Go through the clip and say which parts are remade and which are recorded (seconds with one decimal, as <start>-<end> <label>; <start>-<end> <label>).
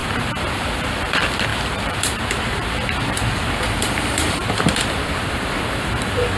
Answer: 0.0-6.4 remade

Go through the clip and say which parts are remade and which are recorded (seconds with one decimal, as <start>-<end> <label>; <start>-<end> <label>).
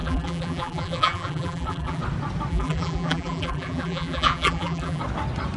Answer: 0.0-2.0 remade; 2.0-2.5 recorded; 2.5-5.0 remade; 5.0-5.6 recorded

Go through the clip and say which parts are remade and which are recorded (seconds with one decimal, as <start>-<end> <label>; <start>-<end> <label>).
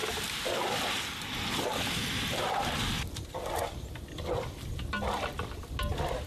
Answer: 0.0-6.3 recorded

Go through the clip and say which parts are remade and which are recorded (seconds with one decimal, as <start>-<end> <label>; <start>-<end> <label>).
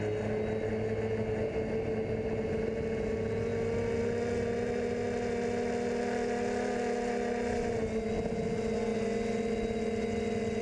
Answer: 0.0-10.6 recorded